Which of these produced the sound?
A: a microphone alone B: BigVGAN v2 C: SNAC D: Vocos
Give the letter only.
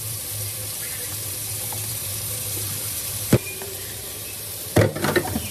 B